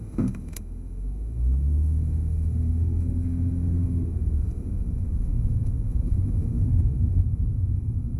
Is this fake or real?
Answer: fake